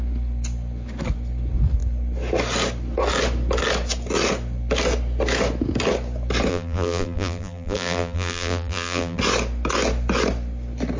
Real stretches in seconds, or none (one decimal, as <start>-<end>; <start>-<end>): 0.0-6.5; 9.2-11.0